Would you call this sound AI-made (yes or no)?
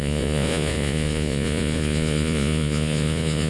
yes